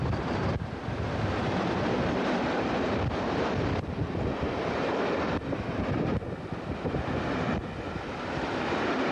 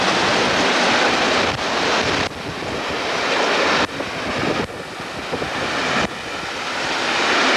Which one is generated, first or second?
first